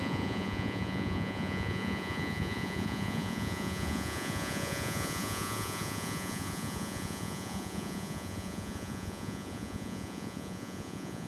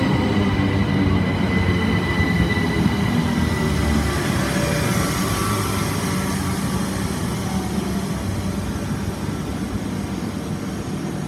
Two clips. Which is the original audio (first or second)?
second